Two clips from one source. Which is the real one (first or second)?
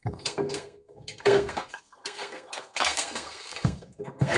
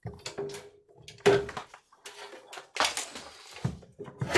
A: second